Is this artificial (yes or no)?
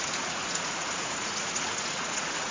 yes